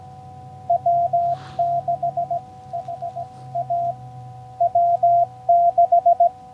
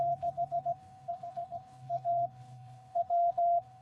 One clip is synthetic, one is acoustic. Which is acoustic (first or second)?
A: first